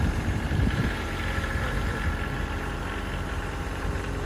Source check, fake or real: fake